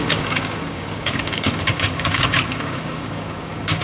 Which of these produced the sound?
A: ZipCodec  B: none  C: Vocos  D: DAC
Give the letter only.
D